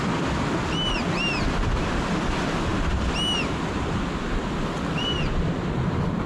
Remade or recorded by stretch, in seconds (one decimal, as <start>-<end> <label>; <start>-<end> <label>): 0.0-6.3 recorded